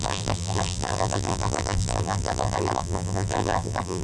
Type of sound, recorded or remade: remade